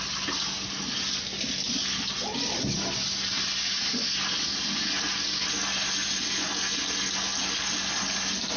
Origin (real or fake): real